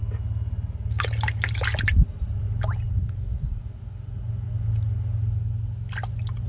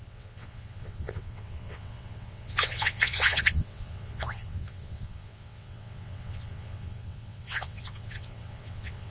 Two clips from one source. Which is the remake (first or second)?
second